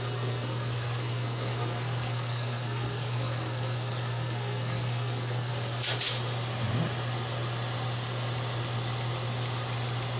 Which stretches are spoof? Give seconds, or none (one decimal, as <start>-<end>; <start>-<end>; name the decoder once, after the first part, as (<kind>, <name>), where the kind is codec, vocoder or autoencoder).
0.0-5.5 (codec, SNAC)